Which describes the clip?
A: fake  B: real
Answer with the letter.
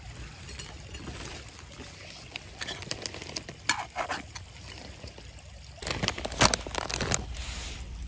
B